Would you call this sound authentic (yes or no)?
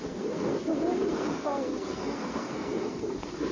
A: no